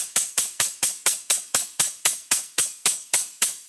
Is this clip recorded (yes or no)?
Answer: no